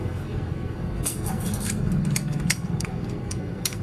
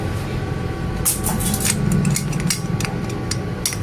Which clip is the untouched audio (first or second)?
second